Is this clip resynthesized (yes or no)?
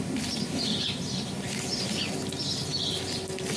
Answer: no